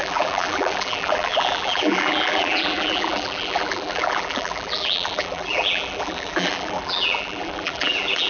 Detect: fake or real fake